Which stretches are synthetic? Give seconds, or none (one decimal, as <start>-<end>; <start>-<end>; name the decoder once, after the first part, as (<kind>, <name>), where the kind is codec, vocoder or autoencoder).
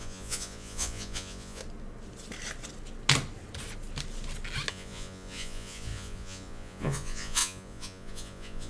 0.0-1.6 (vocoder, Vocos); 4.7-8.7